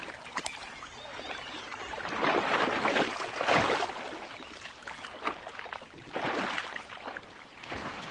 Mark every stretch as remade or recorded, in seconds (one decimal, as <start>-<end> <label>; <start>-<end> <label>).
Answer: 0.0-7.6 recorded; 7.6-8.1 remade